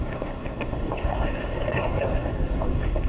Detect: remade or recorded remade